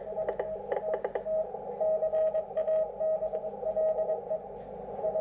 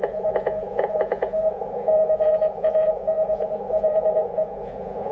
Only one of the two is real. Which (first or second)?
first